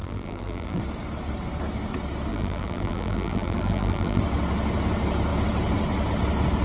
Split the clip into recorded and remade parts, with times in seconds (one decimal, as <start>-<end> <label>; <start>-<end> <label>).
0.0-0.8 remade; 0.8-2.3 recorded; 2.3-4.2 remade; 4.2-6.6 recorded